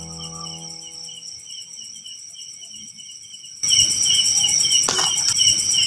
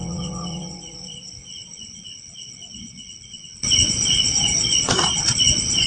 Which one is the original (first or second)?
first